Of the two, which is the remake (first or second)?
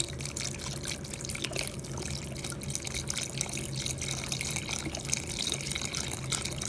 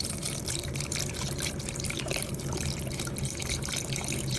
second